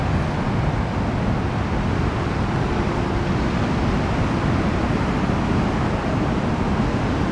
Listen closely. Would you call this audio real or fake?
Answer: real